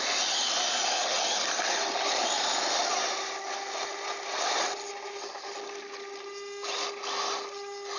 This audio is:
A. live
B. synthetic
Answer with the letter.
A